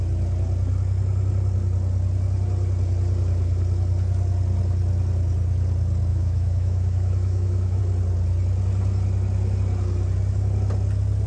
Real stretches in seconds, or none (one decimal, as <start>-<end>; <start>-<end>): 0.0-6.1; 7.8-11.3